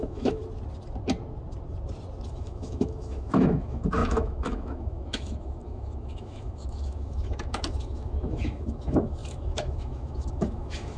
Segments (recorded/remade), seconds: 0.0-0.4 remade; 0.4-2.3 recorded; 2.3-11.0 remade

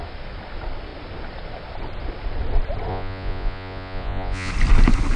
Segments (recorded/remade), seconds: 0.0-2.9 recorded; 2.9-4.5 remade; 4.5-5.2 recorded